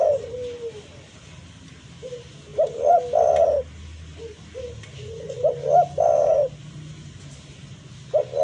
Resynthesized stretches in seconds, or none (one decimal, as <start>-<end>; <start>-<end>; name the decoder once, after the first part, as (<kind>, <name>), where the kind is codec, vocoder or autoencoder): none